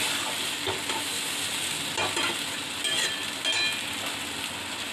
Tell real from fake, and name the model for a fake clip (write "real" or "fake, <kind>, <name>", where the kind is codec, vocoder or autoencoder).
real